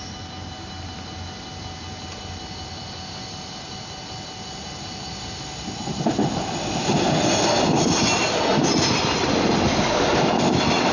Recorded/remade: recorded